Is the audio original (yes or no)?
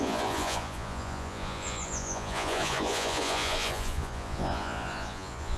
no